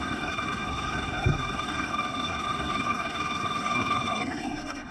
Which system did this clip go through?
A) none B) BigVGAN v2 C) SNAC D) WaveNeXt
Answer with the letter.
C